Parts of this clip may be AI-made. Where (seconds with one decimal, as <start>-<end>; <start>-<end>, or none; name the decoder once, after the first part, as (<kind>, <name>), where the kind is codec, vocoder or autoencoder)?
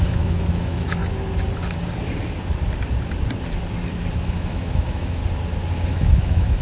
0.0-1.0 (autoencoder, DAC-VAE); 4.2-5.2; 5.9-6.6